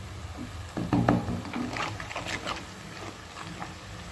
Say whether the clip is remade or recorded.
recorded